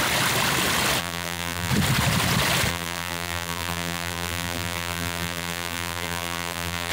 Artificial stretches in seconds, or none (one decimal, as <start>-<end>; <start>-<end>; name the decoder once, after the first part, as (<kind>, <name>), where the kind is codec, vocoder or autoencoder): 1.0-1.7 (vocoder, BigVGAN v2); 2.7-6.9